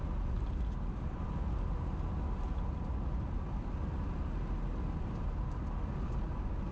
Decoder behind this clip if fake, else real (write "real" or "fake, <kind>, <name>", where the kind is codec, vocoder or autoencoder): real